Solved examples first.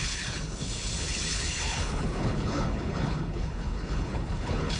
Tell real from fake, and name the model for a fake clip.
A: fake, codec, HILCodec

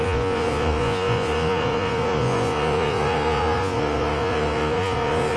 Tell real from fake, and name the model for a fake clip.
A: fake, vocoder, Vocos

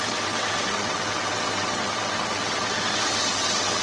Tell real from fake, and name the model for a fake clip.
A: fake, vocoder, WaveNeXt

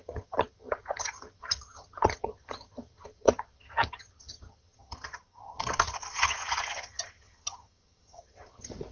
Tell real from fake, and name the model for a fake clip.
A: fake, vocoder, HiFi-GAN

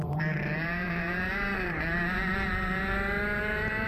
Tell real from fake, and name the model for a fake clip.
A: fake, vocoder, BigVGAN v2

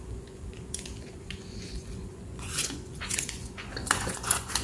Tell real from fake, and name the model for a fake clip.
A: fake, vocoder, Vocos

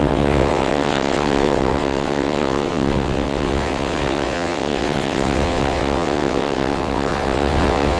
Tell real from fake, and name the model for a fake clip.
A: fake, vocoder, WaveNeXt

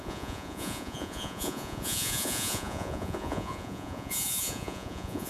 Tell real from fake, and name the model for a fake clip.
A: fake, vocoder, Vocos